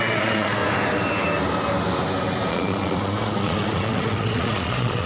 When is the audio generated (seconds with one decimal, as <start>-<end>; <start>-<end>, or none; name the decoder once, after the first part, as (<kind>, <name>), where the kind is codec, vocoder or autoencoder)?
0.0-0.6 (vocoder, Vocos); 2.5-5.1